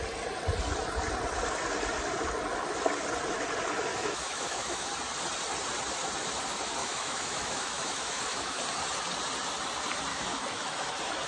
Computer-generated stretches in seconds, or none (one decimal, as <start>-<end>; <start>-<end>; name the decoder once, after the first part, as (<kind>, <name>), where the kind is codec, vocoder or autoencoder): 3.9-4.9 (autoencoder, DAC-VAE); 6.8-8.6; 10.1-10.9